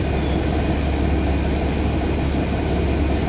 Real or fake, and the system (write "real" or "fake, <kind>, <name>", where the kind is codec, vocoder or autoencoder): real